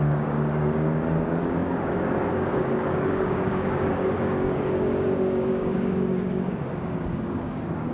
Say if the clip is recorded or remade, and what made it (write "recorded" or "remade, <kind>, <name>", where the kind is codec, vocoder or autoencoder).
remade, codec, DAC